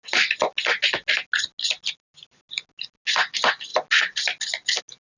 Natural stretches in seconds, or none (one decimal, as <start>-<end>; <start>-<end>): 0.0-5.2